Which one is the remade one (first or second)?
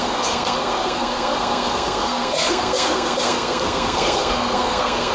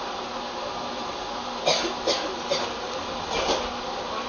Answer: first